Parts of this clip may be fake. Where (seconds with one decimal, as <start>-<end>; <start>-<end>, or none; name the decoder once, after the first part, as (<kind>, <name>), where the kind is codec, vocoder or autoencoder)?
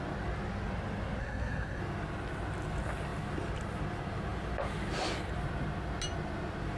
1.2-1.8 (codec, SNAC)